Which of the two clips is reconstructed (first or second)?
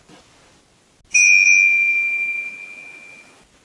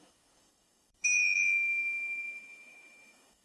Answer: second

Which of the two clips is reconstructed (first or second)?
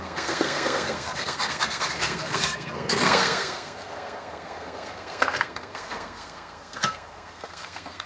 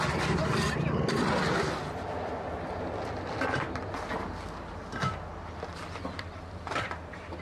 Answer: first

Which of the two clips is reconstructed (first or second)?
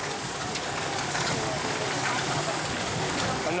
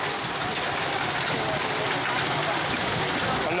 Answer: first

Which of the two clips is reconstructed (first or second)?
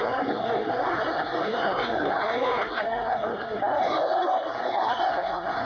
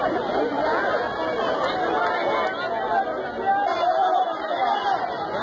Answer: first